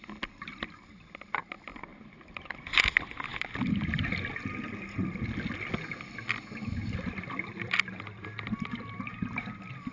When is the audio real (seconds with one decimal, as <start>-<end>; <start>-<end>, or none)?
0.0-1.9; 2.8-3.3; 4.0-9.9